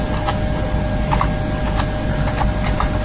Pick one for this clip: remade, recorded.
recorded